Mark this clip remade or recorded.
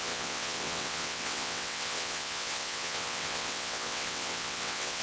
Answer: remade